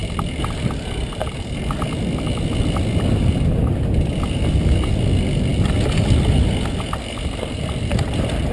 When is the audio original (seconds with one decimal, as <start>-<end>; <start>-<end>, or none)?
0.0-8.5